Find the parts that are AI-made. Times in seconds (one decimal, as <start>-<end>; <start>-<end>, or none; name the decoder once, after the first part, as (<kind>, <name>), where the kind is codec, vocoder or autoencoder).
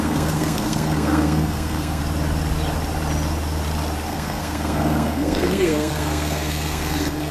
0.0-2.0 (codec, SNAC); 4.1-7.3